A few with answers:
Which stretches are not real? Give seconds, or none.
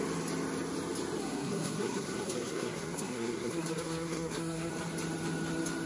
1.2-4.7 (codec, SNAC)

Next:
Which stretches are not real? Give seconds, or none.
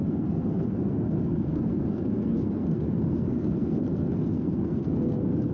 0.0-5.5 (codec, SNAC)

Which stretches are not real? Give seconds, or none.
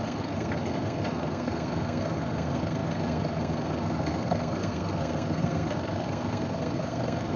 0.0-7.4 (codec, SNAC)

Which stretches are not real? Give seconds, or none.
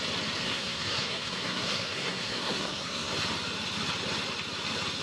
0.4-3.1 (codec, SNAC)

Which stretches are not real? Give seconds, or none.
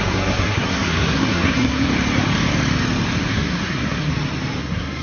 0.0-1.9 (codec, SNAC); 3.2-4.1; 4.6-5.0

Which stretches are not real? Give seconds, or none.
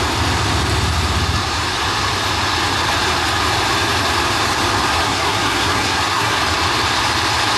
4.9-6.4 (codec, SNAC)